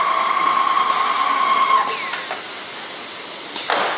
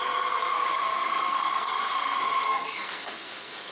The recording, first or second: first